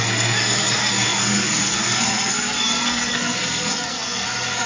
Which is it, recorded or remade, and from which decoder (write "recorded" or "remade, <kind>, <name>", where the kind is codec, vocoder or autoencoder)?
remade, codec, SNAC